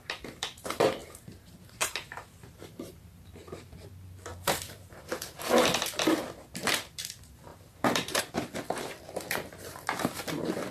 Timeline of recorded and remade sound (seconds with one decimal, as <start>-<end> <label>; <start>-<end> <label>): 0.0-1.0 recorded; 1.0-3.3 remade; 3.3-4.3 recorded; 4.3-5.4 remade; 5.4-7.5 recorded; 7.5-8.2 remade; 8.2-10.7 recorded